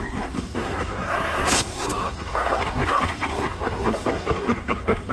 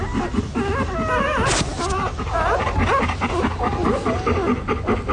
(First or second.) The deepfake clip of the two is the first